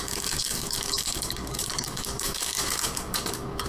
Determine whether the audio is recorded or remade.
remade